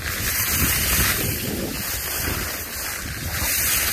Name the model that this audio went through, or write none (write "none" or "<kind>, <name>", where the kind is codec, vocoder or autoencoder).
none